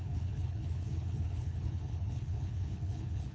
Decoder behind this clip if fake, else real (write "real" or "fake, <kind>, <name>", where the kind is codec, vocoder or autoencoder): fake, codec, HILCodec